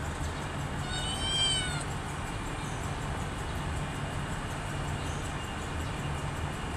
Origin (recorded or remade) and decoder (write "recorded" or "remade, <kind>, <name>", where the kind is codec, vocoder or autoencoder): recorded